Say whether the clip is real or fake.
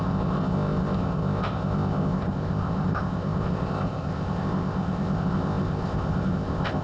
fake